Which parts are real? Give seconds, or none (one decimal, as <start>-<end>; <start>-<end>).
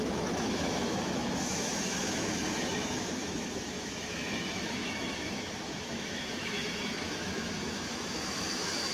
none